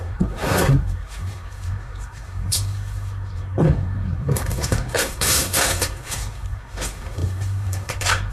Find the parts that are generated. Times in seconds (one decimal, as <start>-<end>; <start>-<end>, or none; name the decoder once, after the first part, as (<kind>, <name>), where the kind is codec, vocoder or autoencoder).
0.0-8.3 (codec, SNAC)